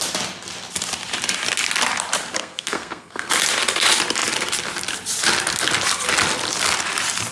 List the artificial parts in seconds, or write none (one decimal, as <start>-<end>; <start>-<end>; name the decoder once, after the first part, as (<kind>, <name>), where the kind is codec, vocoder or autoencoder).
2.4-3.3 (codec, SNAC)